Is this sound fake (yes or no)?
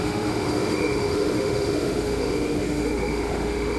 yes